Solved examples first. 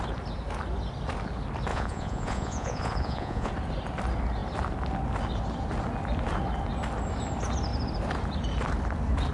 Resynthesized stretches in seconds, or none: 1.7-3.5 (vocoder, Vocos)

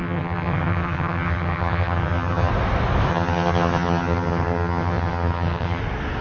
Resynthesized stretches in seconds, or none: 0.0-2.5 (vocoder, HiFi-GAN); 3.1-5.8

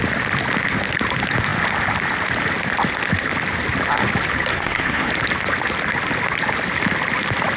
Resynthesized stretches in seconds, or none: 4.5-5.1 (codec, SNAC)